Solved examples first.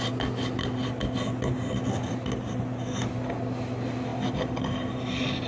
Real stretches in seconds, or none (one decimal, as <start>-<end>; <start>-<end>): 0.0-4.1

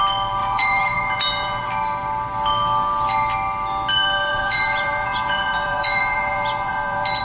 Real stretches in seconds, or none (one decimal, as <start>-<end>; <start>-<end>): 0.0-0.4; 1.7-4.3

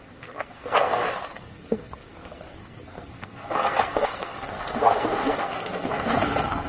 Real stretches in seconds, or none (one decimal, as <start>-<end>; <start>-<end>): none

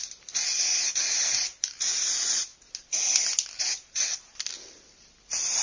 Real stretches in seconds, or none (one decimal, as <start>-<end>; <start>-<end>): 0.0-5.6

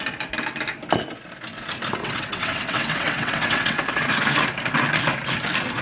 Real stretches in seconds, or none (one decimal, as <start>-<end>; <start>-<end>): 0.0-2.0; 4.1-5.8

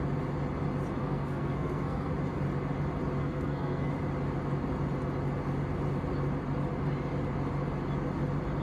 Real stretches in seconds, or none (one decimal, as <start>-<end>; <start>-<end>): 0.0-1.0; 2.1-3.2; 3.9-8.6

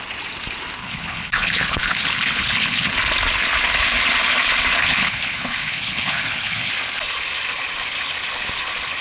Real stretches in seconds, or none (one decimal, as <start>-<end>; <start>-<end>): 0.0-0.8; 2.9-4.8; 6.7-9.0

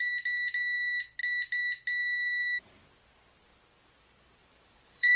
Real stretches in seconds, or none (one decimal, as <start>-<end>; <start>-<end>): 0.0-4.4